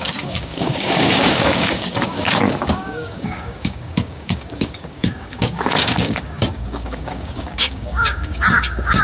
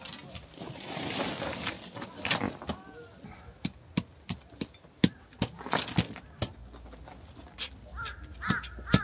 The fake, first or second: first